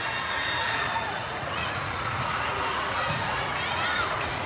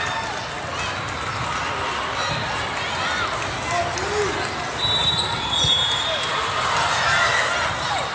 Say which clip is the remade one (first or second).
first